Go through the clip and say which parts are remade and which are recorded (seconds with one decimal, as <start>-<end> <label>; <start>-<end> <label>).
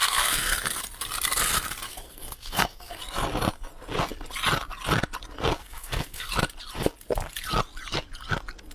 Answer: 0.0-0.8 remade; 0.8-1.9 recorded; 1.9-3.0 remade; 3.0-5.6 recorded; 5.6-6.3 remade; 6.3-8.7 recorded